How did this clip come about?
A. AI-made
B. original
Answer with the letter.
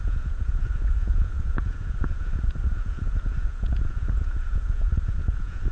A